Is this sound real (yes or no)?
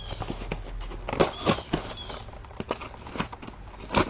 yes